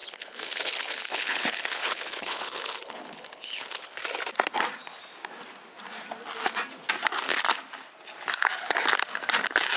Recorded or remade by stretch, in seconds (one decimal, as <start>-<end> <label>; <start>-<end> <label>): 0.0-3.9 remade; 3.9-9.8 recorded